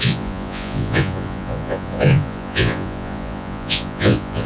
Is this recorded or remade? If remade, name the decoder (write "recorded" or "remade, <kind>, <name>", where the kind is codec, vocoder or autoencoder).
remade, vocoder, Vocos